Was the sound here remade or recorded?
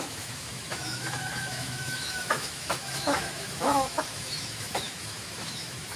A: remade